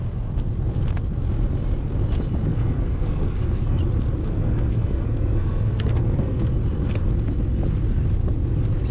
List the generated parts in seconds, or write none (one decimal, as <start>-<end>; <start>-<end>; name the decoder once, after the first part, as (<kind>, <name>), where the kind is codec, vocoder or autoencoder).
2.5-3.8 (codec, SNAC); 4.2-6.4